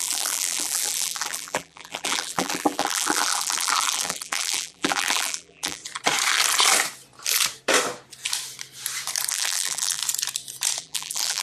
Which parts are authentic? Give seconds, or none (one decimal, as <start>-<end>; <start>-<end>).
5.8-9.3; 10.0-10.8